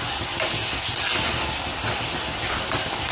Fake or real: real